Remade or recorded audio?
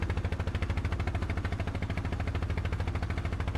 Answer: recorded